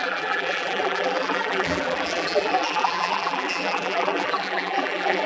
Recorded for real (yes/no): no